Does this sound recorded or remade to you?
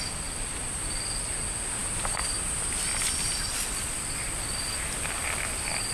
recorded